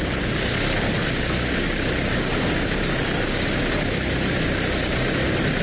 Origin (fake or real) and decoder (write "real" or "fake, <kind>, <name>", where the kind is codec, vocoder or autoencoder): real